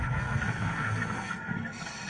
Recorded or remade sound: remade